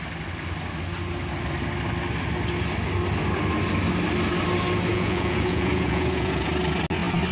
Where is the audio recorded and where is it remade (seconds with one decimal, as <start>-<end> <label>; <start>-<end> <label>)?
0.0-4.9 recorded; 4.9-6.5 remade; 6.5-7.3 recorded